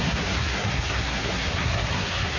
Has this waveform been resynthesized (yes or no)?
yes